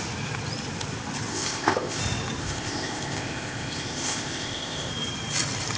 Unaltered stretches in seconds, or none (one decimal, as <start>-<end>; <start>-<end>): 0.0-1.3; 2.0-2.4; 4.9-5.8